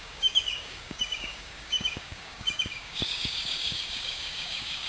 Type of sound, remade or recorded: remade